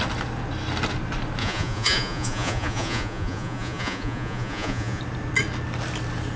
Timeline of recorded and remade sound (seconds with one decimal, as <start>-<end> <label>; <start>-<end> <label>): 0.0-1.4 recorded; 1.4-5.0 remade; 5.0-6.4 recorded